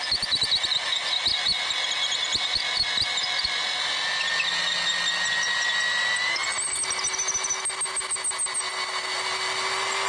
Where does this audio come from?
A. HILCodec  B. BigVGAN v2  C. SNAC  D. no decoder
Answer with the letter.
D